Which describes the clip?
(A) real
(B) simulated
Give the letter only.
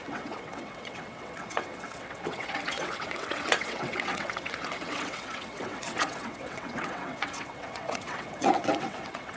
B